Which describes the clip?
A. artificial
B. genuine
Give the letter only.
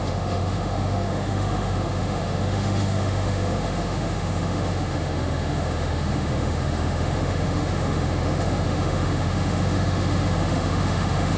A